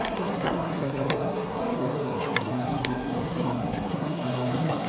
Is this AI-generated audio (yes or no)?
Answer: yes